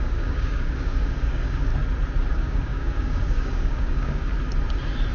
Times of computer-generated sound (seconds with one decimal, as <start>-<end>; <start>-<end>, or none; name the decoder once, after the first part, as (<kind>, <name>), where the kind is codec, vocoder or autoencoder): 0.0-1.7 (codec, DAC); 2.3-4.3